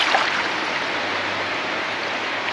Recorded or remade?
remade